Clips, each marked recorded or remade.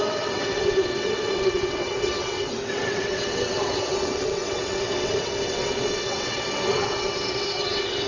remade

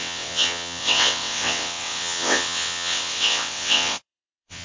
remade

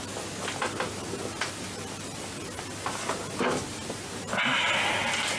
recorded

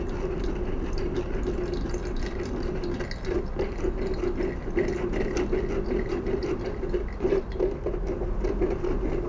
recorded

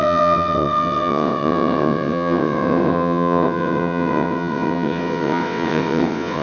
remade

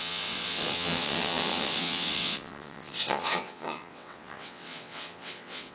remade